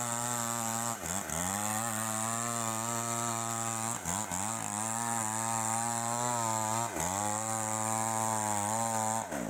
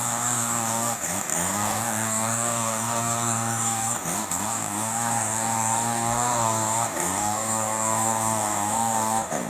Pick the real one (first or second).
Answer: first